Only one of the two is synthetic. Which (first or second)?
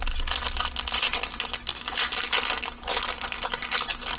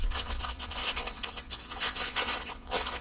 second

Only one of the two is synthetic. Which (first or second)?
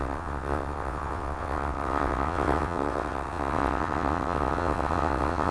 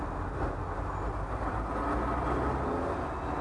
first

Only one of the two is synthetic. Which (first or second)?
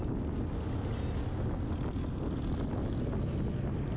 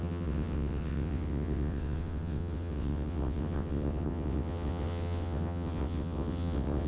second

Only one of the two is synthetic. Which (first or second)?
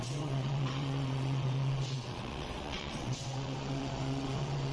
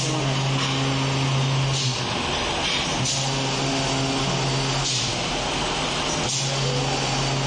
first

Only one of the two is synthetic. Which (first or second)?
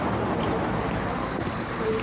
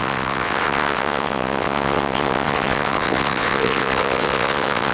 second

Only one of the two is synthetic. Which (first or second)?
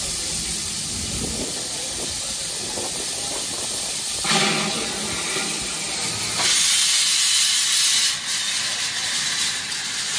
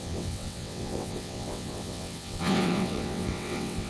second